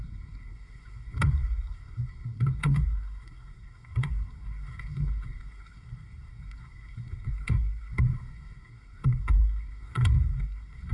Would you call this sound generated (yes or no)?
yes